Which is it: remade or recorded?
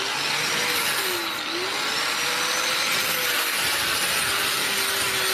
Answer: recorded